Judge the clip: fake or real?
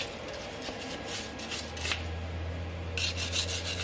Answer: real